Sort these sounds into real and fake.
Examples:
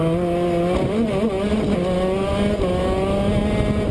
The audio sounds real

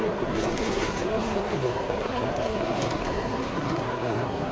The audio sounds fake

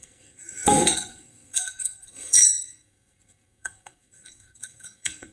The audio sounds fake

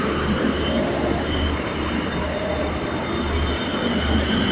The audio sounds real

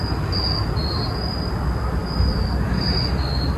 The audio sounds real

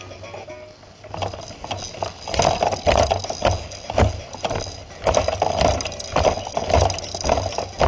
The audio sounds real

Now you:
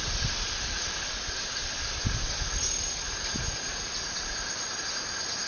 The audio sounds real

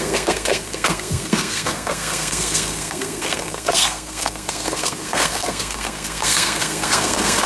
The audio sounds fake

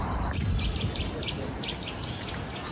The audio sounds real